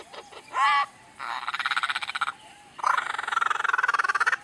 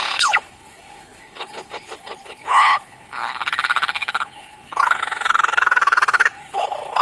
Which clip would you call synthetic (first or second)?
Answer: second